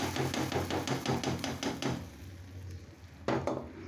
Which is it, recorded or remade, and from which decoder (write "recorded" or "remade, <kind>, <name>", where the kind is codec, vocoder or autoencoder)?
recorded